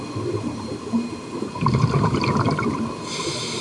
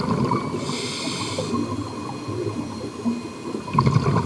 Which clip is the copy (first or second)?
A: first